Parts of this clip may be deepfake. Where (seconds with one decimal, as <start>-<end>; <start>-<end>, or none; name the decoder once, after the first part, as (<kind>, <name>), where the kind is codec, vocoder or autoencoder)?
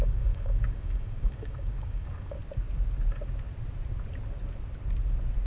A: 0.0-2.4 (codec, DAC)